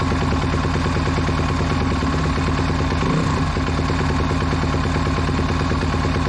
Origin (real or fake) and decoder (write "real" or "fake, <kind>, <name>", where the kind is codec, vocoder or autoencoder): real